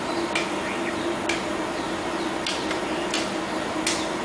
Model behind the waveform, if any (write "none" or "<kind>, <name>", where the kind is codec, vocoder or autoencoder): none